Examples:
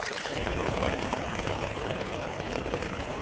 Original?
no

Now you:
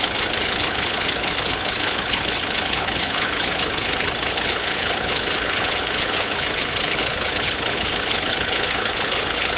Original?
no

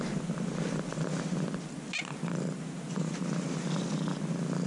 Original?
yes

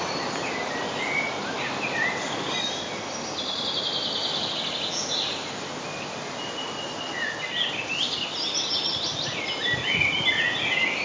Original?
yes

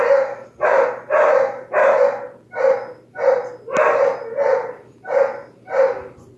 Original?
yes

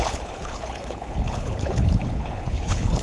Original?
no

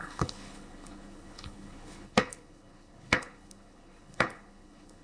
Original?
no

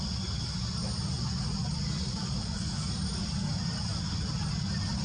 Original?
yes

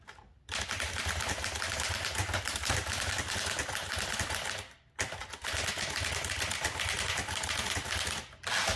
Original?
yes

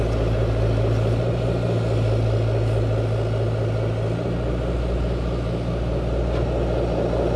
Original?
yes